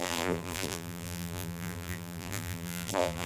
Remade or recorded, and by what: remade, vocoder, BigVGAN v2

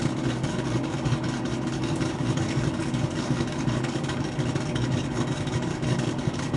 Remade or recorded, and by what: remade, codec, DAC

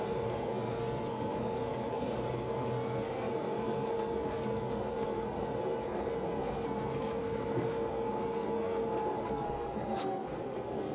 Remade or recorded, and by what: remade, codec, SNAC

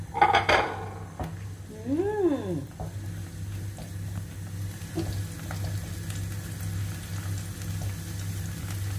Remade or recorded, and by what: recorded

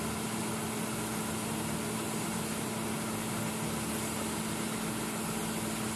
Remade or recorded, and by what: recorded